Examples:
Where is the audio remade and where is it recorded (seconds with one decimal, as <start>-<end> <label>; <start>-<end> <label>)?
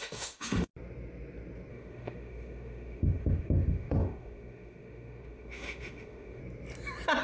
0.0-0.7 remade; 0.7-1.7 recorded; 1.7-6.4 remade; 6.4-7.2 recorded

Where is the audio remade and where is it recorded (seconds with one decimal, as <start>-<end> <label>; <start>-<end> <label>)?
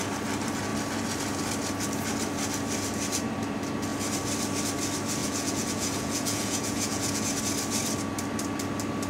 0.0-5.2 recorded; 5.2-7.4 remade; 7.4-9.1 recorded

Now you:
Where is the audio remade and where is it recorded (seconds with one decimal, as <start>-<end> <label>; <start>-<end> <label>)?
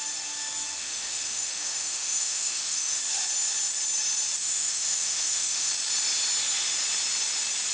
0.0-0.8 recorded; 0.8-3.0 remade; 3.0-4.4 recorded; 4.4-5.7 remade; 5.7-7.7 recorded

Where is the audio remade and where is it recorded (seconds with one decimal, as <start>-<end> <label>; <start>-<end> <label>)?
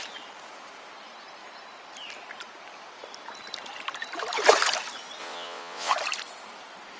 0.0-5.2 recorded; 5.2-5.9 remade; 5.9-7.0 recorded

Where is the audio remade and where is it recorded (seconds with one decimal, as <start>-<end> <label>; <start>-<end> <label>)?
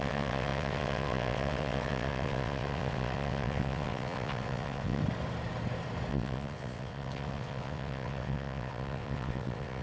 0.0-5.0 remade; 5.0-6.1 recorded; 6.1-9.8 remade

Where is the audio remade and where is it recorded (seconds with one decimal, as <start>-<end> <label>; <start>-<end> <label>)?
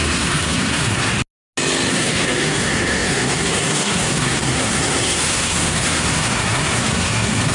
0.0-1.1 remade; 1.1-1.9 recorded; 1.9-7.5 remade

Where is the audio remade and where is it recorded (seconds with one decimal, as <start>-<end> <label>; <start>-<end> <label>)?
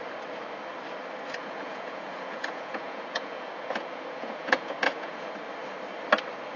0.0-1.4 recorded; 1.4-5.3 remade; 5.3-6.6 recorded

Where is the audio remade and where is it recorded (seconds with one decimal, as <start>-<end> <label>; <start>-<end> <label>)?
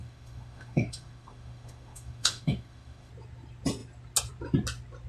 0.0-3.1 remade; 3.1-5.1 recorded